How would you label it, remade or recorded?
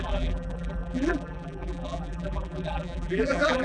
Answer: remade